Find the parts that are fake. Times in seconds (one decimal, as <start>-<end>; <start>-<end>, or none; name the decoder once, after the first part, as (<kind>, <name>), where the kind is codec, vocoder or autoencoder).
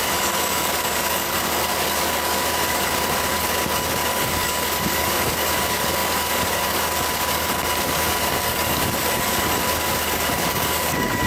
0.0-11.3 (codec, DAC)